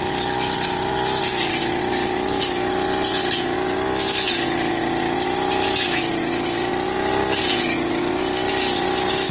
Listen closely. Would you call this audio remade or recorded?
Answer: recorded